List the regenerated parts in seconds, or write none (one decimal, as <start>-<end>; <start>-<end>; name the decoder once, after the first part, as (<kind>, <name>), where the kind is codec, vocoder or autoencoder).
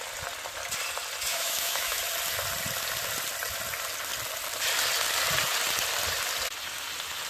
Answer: 1.3-2.0 (autoencoder, DAC-VAE)